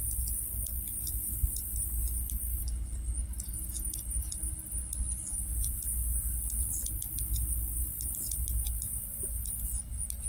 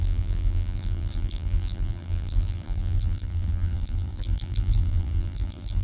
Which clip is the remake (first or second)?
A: second